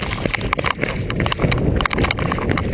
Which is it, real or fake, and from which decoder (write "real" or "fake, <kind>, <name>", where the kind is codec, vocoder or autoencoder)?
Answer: real